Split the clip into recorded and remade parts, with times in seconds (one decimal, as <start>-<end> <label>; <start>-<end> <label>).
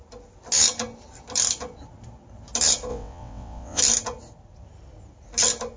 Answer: 0.0-2.9 recorded; 2.9-3.8 remade; 3.8-5.8 recorded